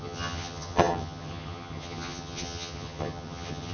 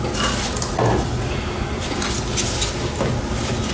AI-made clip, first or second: first